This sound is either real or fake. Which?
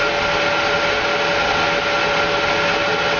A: real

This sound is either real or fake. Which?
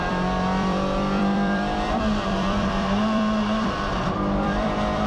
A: fake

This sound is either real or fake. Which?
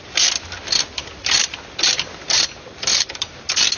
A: real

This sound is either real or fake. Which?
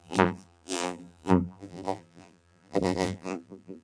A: fake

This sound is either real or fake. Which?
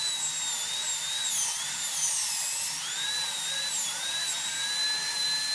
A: real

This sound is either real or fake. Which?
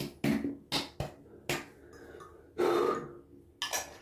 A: real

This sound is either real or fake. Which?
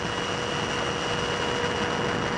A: real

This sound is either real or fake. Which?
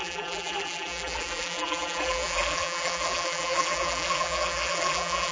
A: fake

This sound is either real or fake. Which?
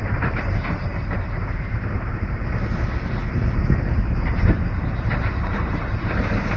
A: fake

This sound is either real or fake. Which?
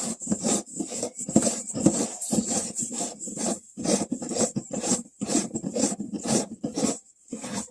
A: fake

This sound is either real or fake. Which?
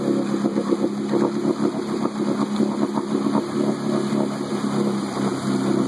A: real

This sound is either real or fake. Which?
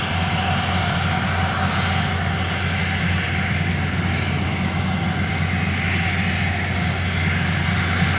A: real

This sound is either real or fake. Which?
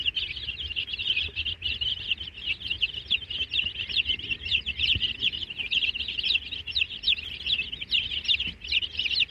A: real